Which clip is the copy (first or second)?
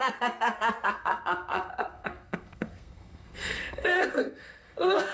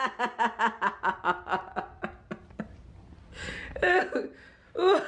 first